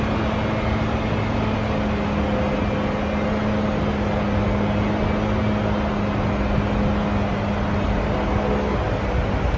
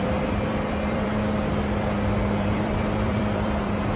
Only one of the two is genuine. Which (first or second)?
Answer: first